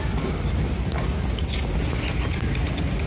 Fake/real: real